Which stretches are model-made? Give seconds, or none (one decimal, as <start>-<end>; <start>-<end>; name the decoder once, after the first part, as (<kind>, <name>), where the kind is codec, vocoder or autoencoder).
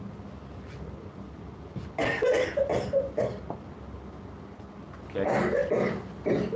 none